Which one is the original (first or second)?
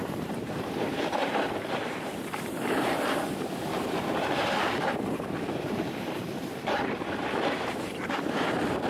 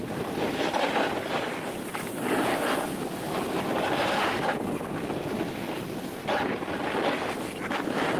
second